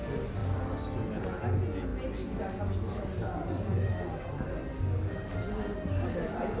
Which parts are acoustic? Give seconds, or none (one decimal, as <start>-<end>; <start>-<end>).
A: 0.0-4.7; 5.3-6.6